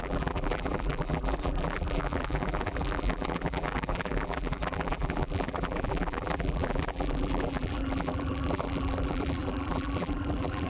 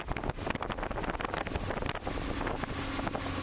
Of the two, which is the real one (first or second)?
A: second